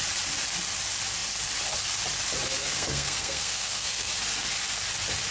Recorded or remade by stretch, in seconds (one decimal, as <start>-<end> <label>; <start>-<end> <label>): 0.0-2.5 recorded; 2.5-4.1 remade; 4.1-5.3 recorded